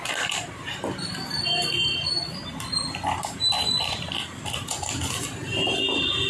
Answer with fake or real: real